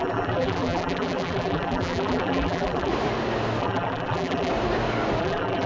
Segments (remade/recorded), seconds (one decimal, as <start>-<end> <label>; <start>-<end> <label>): 0.0-2.9 remade; 2.9-3.6 recorded; 3.6-4.5 remade; 4.5-5.2 recorded; 5.2-5.7 remade